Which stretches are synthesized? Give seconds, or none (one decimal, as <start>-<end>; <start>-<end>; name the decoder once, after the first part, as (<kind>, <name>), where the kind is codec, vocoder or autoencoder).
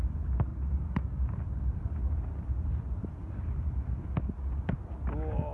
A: 0.5-1.8 (vocoder, BigVGAN v2)